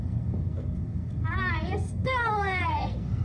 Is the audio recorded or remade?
remade